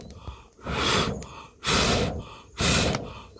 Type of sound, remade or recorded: recorded